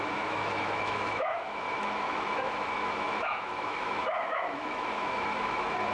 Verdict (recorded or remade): remade